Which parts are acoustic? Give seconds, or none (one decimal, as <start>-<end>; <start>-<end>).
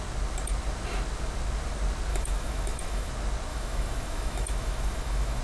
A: 0.0-2.1; 3.1-3.5